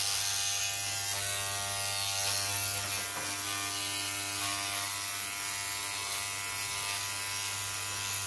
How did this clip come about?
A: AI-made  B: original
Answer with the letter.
B